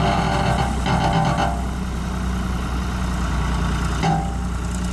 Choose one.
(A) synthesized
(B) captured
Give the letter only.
B